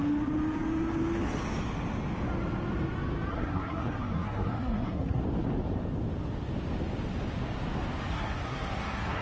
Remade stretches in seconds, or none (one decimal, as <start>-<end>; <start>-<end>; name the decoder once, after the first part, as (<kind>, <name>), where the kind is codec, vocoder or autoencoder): 3.3-5.2 (codec, SNAC); 8.1-9.2